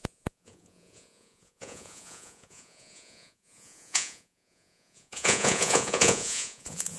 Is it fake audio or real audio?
fake